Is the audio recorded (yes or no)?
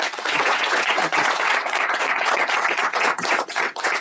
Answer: no